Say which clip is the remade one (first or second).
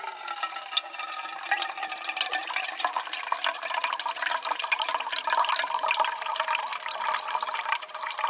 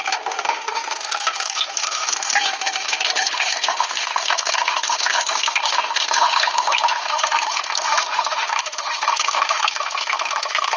second